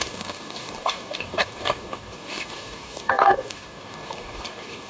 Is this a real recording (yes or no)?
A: no